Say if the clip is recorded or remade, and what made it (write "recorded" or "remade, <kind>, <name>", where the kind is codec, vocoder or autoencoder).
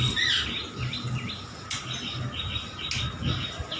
recorded